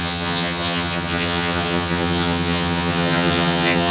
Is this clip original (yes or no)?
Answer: no